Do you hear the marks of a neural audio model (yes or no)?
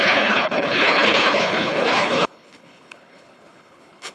yes